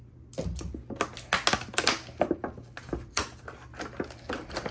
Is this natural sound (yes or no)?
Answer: yes